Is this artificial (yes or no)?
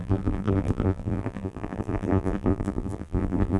yes